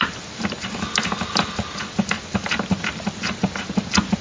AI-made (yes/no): no